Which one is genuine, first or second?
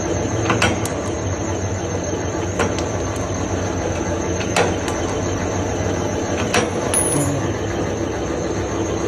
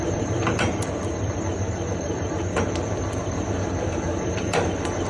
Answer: first